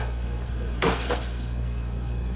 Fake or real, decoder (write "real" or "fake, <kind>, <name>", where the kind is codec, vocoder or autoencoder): fake, codec, SNAC